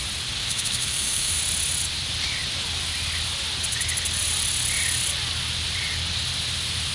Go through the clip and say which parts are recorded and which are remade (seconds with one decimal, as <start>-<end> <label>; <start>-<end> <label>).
0.0-0.4 recorded; 0.4-1.4 remade; 1.4-6.9 recorded